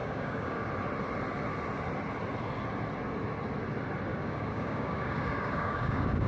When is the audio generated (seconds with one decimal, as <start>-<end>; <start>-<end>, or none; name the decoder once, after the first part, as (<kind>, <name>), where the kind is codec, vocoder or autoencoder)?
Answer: 0.0-0.7 (codec, DAC); 4.1-6.3